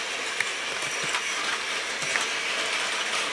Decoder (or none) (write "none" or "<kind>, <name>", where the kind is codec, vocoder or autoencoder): none